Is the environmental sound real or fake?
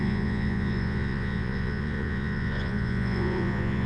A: fake